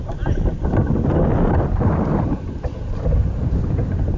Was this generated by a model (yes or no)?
no